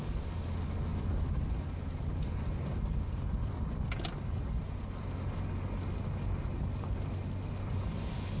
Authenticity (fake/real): real